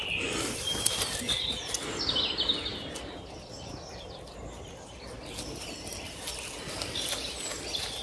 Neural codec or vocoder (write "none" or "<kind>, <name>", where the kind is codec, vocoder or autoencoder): none